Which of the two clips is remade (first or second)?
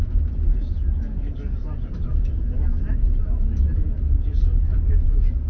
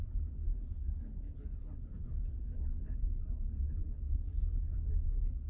second